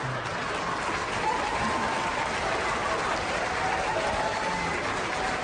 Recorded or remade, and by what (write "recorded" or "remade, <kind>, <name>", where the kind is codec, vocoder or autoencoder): recorded